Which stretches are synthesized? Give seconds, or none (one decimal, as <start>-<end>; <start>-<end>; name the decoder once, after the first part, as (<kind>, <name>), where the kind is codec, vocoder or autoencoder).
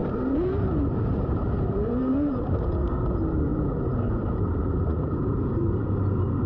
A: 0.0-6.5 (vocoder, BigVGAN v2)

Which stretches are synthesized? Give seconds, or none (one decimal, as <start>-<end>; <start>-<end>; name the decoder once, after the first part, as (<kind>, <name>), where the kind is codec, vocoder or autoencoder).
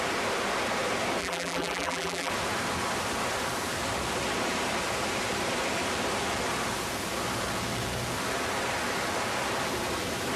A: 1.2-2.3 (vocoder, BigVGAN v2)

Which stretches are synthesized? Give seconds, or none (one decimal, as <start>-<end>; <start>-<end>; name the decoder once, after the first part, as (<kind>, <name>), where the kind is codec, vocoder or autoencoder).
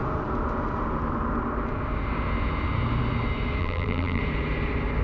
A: 3.6-4.2 (vocoder, BigVGAN v2)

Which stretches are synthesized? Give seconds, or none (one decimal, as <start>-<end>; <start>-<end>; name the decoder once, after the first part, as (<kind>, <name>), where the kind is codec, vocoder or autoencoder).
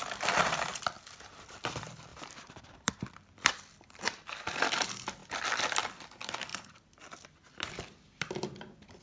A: 0.0-5.2 (vocoder, BigVGAN v2); 5.7-9.0